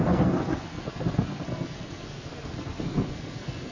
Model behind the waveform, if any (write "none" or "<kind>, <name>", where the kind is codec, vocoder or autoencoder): codec, SNAC